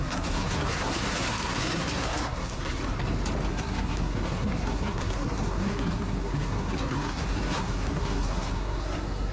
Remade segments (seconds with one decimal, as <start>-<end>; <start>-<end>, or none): 0.0-2.8; 3.5-9.3